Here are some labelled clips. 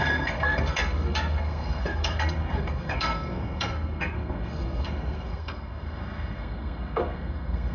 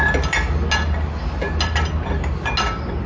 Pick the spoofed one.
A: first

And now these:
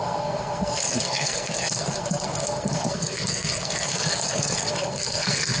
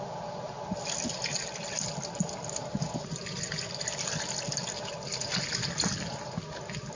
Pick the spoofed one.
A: first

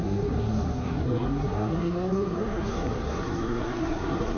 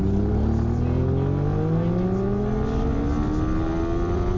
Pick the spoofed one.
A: first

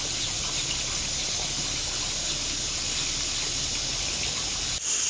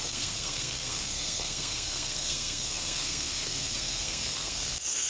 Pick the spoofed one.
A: second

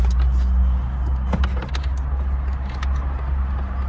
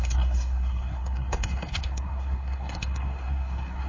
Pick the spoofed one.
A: second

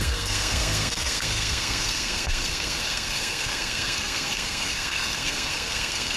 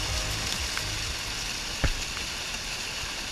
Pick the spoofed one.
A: first